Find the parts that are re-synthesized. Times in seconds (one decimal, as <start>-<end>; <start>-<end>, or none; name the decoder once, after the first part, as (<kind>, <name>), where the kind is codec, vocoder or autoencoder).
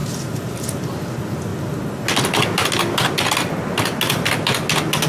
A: 0.0-0.9 (vocoder, BigVGAN v2)